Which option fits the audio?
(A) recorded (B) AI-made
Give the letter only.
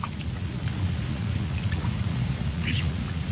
B